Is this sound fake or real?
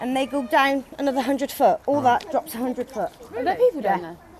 real